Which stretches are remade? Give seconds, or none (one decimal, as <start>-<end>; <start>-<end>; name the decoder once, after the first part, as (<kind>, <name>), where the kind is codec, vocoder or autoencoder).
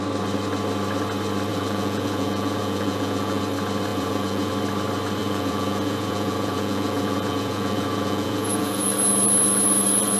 1.5-3.4 (vocoder, Vocos); 3.9-4.5; 5.2-8.9